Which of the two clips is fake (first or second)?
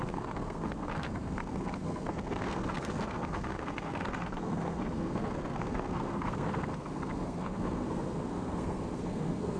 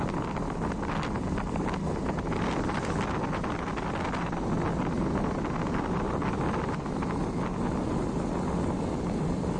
first